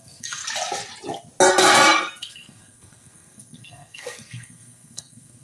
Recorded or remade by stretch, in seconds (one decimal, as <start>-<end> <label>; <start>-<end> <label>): 0.0-0.4 remade; 0.4-1.5 recorded; 1.5-5.4 remade